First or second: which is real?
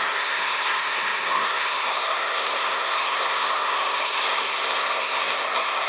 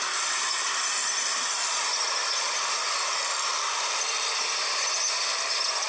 second